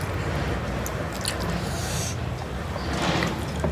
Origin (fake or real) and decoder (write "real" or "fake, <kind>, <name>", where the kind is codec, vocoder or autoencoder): real